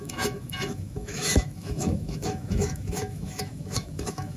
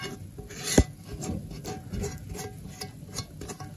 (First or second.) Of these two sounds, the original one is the second